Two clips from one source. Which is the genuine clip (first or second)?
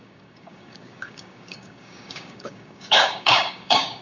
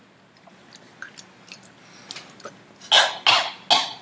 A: second